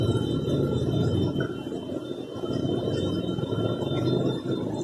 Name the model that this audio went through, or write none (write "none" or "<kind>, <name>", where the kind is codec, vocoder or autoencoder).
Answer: none